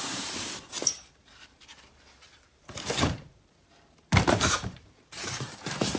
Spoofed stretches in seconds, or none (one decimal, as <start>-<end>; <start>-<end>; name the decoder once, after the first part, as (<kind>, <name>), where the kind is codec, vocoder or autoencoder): 0.0-6.0 (vocoder, BigVGAN v2)